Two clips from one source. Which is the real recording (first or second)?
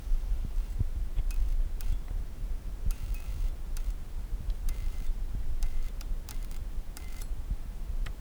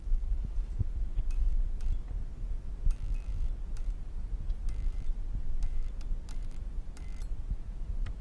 second